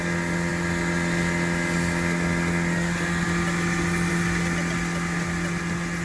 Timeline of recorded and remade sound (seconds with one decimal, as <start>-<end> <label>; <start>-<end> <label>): 0.0-6.0 recorded